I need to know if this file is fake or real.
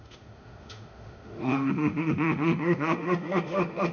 fake